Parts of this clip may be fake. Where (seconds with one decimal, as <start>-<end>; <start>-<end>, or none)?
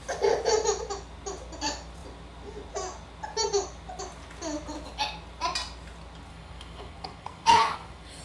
6.3-8.2